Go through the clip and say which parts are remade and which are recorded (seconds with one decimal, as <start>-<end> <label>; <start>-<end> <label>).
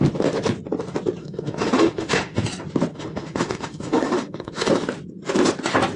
0.0-1.2 recorded; 1.2-2.4 remade; 2.4-2.9 recorded; 2.9-4.7 remade; 4.7-6.0 recorded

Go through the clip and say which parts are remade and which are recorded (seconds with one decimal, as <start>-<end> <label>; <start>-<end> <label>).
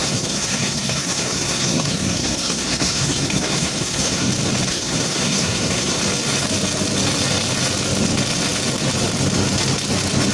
0.0-4.3 remade; 4.3-4.7 recorded; 4.7-6.0 remade; 6.0-10.3 recorded